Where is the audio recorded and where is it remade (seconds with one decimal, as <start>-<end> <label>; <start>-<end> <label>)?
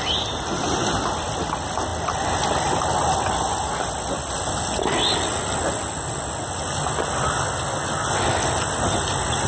0.0-9.5 recorded